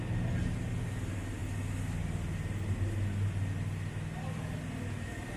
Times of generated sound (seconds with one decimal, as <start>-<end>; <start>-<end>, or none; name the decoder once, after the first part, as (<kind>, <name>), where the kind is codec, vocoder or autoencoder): none